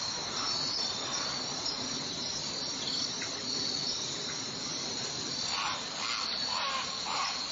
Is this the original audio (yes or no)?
yes